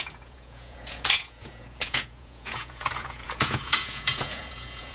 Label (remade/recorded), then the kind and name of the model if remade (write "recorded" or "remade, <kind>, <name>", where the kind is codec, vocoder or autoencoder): remade, vocoder, Vocos